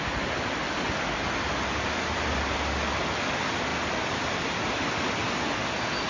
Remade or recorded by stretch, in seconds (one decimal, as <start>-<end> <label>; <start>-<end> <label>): 0.0-6.1 recorded